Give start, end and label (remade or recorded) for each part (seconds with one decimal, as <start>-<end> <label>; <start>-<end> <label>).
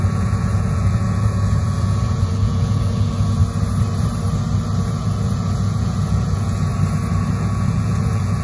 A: 0.0-3.4 remade; 3.4-4.8 recorded; 4.8-6.7 remade; 6.7-7.3 recorded; 7.3-8.4 remade